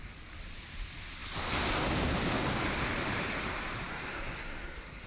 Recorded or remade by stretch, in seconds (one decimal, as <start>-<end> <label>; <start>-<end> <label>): 0.0-3.9 recorded; 3.9-5.1 remade